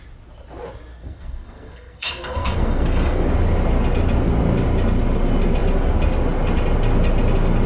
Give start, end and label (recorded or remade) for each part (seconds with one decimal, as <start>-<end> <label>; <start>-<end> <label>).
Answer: 0.0-0.9 recorded; 0.9-3.2 remade; 3.2-7.7 recorded